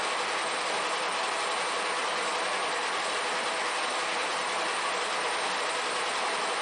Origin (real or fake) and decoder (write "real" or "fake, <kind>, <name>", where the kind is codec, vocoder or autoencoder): real